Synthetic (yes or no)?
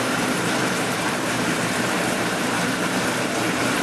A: yes